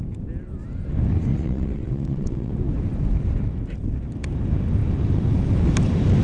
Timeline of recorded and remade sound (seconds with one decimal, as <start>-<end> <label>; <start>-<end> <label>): 0.0-1.3 recorded; 1.3-2.5 remade; 2.5-6.2 recorded